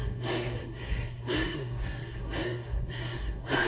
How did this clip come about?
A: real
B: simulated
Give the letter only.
B